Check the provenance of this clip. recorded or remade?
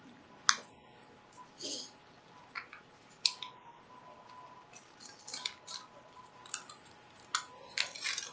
recorded